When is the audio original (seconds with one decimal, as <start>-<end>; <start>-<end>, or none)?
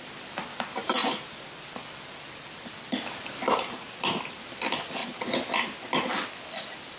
0.0-7.0